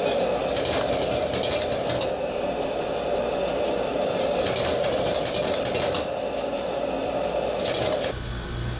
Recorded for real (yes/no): yes